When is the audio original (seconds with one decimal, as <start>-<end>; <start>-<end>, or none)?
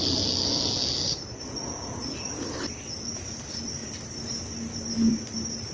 0.0-5.7